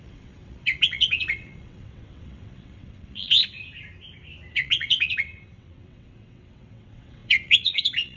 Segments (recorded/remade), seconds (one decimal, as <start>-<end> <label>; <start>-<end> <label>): 0.0-3.4 remade; 3.4-4.5 recorded; 4.5-8.2 remade